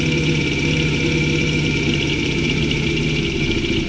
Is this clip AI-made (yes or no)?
no